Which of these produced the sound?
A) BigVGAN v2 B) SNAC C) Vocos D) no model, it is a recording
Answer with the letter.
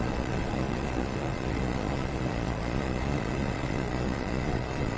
C